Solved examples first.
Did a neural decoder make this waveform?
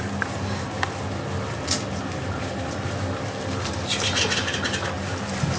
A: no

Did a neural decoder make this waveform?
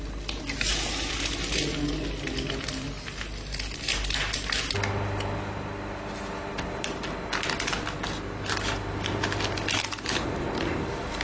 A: no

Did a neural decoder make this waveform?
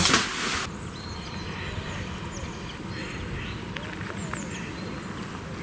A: no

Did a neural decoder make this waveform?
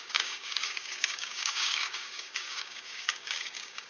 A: yes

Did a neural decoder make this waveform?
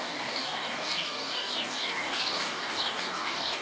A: yes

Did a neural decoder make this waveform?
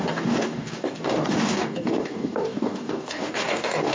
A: yes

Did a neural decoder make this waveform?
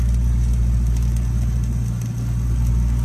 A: no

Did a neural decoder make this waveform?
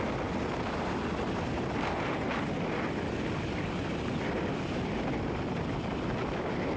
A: no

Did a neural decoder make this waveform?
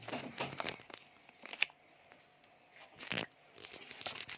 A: no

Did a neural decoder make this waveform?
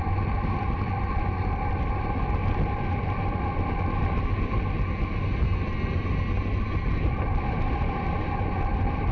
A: no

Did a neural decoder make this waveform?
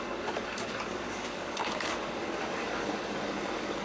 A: yes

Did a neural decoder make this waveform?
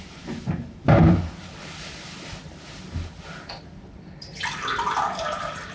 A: no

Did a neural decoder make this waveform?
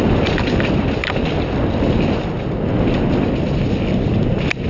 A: no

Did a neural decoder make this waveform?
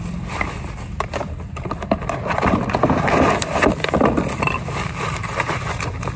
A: no